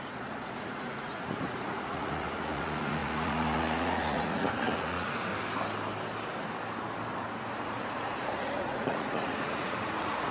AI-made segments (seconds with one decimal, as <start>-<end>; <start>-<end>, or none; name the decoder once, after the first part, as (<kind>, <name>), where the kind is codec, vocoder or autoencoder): 0.0-5.3 (vocoder, Vocos); 7.6-10.3